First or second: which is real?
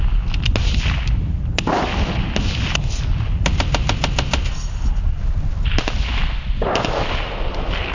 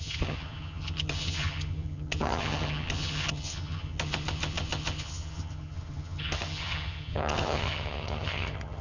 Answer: first